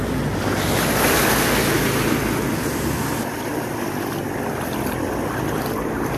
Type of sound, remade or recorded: recorded